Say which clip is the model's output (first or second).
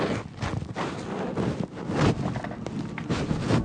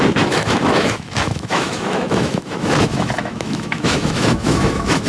second